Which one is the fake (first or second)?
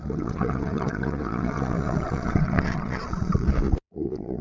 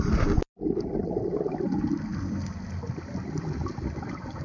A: first